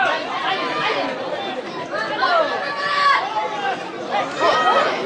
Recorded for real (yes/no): yes